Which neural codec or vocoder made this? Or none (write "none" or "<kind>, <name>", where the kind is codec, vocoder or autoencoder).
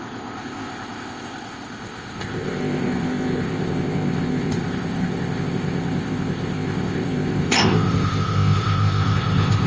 codec, ZipCodec